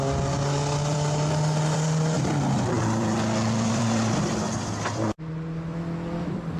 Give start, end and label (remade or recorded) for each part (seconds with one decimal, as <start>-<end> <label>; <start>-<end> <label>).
0.0-0.9 recorded; 0.9-4.3 remade; 4.3-6.6 recorded